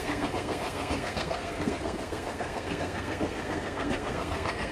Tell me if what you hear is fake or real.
fake